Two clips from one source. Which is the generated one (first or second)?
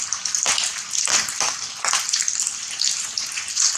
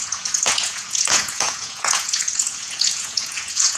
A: second